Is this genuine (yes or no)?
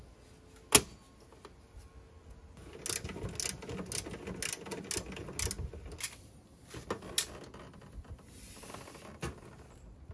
yes